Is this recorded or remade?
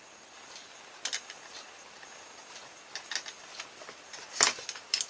recorded